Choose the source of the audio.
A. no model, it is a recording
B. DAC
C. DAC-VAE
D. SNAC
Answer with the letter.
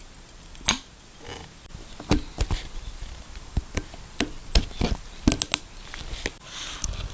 A